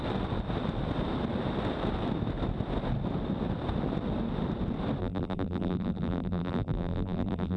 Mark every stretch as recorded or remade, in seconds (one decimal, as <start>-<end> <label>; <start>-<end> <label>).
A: 0.0-5.0 recorded; 5.0-7.6 remade